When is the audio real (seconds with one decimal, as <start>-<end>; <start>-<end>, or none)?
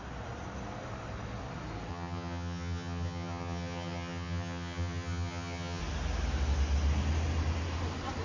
0.0-1.9; 5.8-8.2